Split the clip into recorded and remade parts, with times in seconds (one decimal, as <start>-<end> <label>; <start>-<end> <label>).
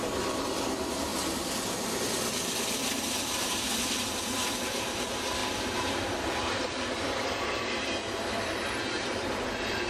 0.0-1.1 remade; 1.1-2.0 recorded; 2.0-5.4 remade; 5.4-6.6 recorded; 6.6-9.9 remade